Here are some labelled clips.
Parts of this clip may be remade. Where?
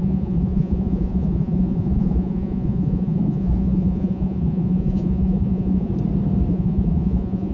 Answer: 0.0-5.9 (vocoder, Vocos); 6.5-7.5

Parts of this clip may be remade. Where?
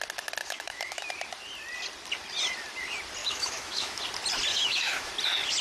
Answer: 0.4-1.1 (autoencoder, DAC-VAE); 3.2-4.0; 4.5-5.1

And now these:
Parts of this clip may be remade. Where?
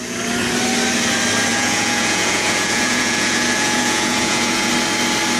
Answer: 1.5-4.7 (vocoder, Vocos)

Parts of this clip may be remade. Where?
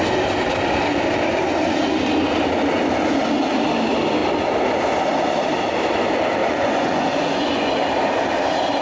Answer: 6.4-7.7 (vocoder, Vocos)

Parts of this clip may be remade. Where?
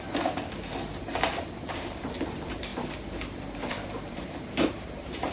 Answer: 0.0-2.7 (vocoder, BigVGAN v2); 3.7-5.3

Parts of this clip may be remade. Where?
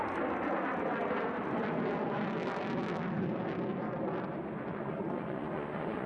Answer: 4.7-6.1 (vocoder, Vocos)